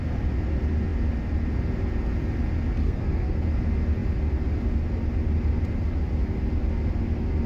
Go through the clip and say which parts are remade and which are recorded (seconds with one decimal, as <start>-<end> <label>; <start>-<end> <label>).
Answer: 0.0-2.8 recorded; 2.8-3.4 remade; 3.4-7.5 recorded